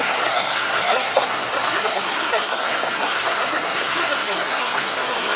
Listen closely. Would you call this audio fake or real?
fake